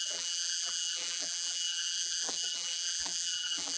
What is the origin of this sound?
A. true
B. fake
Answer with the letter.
B